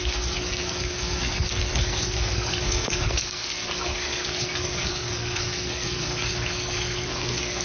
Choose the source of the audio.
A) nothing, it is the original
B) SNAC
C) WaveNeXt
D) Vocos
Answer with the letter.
B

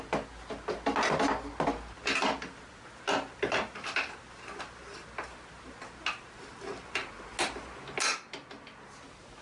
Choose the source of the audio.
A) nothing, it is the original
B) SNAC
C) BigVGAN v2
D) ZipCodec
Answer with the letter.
A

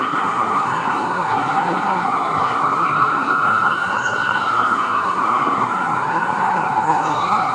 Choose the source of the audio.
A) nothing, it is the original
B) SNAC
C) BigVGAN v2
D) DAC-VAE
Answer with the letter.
B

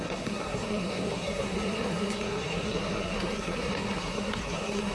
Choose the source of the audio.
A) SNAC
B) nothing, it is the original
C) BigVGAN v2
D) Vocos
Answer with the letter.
A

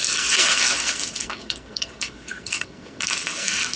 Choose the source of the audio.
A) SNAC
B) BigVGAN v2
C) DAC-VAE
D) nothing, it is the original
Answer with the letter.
A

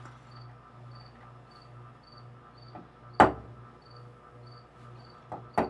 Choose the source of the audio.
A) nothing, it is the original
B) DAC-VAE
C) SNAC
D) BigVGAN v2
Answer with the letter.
A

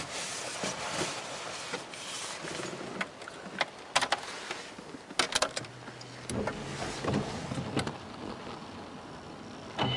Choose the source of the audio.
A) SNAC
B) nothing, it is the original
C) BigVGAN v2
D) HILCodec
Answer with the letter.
B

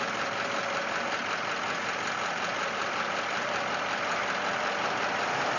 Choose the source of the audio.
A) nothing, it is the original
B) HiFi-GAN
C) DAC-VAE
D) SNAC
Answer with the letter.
A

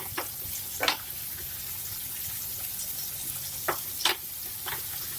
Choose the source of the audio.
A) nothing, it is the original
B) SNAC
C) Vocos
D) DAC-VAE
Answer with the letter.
A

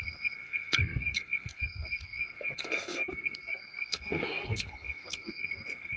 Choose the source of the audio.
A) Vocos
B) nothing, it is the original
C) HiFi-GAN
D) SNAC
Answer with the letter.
D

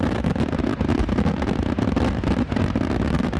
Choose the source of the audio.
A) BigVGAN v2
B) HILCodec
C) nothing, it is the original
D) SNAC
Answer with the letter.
C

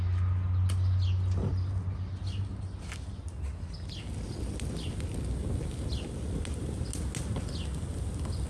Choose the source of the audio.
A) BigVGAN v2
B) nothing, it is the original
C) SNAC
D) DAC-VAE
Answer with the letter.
B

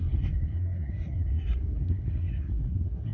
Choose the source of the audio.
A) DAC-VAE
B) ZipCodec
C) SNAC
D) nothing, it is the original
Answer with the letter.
C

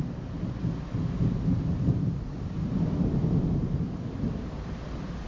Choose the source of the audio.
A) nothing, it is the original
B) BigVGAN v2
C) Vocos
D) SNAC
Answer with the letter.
A